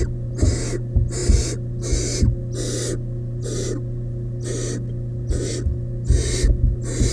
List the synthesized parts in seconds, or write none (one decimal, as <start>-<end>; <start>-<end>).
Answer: none